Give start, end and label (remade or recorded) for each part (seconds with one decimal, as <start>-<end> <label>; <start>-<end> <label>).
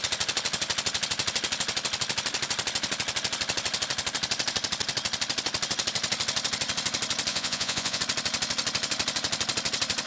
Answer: 0.0-7.3 recorded; 7.3-8.0 remade; 8.0-10.1 recorded